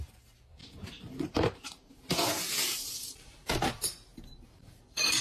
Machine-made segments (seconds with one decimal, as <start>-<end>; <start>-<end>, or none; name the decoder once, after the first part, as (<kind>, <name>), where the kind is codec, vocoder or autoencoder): 0.5-2.0 (vocoder, BigVGAN v2); 2.8-3.5; 4.1-5.2